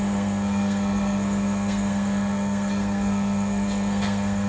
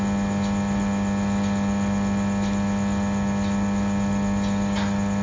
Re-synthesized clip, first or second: first